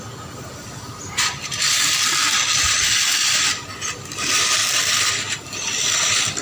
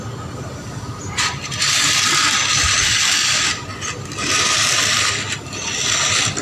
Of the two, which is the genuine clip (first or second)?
second